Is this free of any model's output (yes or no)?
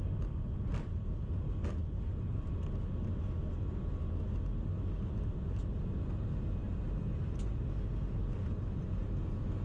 yes